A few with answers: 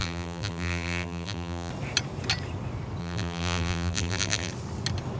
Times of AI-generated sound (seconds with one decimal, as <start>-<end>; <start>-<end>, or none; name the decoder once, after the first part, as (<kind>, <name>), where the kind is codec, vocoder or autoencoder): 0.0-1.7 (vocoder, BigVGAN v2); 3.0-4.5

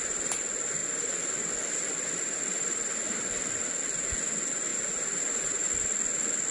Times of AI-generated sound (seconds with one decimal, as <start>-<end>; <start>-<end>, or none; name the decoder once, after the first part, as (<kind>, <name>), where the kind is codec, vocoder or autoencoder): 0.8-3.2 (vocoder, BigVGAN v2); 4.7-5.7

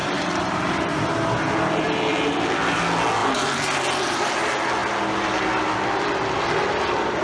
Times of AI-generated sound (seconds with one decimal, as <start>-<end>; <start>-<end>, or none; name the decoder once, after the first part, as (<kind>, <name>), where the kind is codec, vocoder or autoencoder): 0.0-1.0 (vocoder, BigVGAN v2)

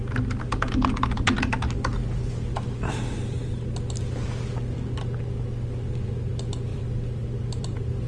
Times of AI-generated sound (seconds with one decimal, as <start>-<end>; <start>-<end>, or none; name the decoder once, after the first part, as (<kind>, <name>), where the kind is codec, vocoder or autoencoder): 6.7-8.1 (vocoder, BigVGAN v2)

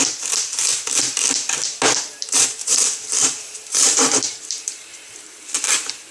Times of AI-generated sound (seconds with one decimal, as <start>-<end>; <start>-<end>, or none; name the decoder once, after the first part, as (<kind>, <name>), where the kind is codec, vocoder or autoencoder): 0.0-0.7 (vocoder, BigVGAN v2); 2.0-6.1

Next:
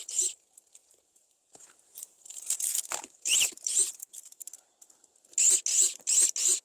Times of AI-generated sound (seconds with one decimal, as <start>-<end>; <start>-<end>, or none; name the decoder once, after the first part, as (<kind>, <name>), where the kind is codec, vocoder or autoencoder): 0.8-4.7 (vocoder, BigVGAN v2); 5.7-6.6

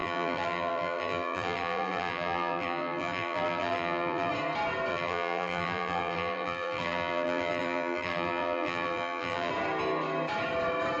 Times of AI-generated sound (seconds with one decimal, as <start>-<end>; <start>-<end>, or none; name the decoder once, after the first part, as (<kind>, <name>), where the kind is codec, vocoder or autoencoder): 0.0-4.3 (vocoder, BigVGAN v2); 4.9-9.5

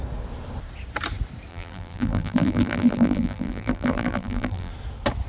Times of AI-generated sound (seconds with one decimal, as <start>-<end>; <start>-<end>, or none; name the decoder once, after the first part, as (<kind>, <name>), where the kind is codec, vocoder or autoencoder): 1.5-4.7 (vocoder, BigVGAN v2)